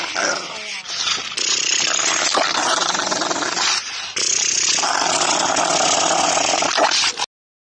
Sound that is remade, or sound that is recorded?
recorded